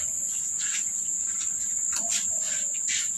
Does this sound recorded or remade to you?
recorded